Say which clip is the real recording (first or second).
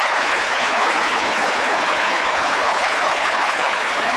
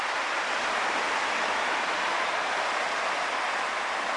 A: second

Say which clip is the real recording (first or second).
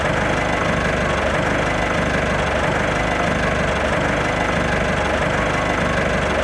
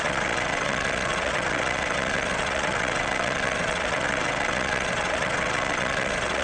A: first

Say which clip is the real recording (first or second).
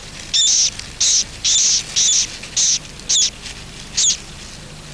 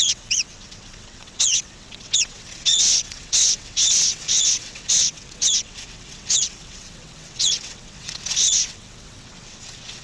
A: first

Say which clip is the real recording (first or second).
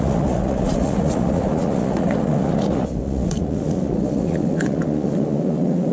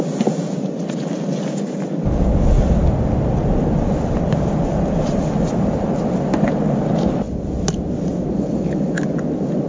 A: second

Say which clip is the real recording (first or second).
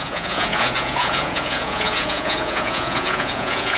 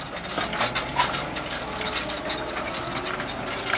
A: second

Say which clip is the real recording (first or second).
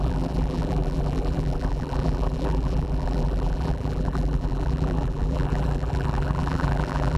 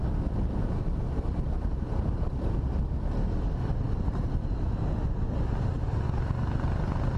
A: second